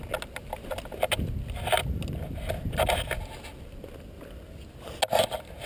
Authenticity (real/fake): real